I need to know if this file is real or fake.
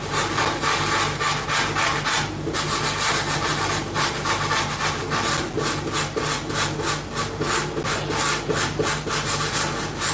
real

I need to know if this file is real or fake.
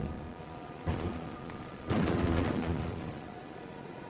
fake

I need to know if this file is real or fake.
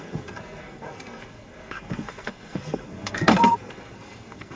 fake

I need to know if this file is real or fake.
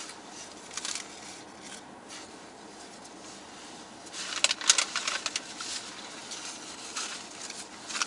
real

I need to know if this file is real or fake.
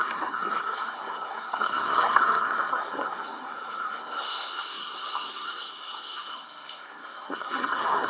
fake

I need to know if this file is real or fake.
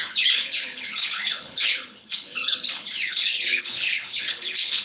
fake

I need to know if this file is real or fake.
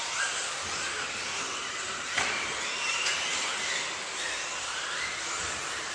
real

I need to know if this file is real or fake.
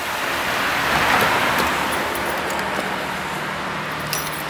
real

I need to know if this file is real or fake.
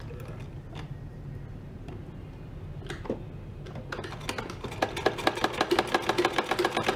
real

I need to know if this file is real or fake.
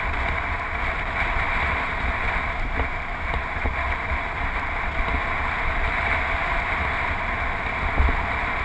real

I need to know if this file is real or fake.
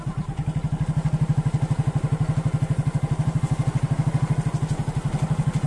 real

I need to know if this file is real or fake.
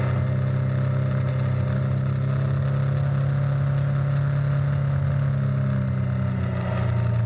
real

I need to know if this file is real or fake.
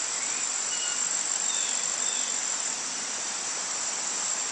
real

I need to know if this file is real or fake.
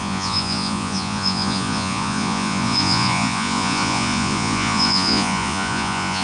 fake